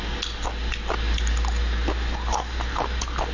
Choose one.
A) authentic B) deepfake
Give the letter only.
A